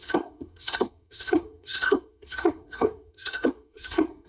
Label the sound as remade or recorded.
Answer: remade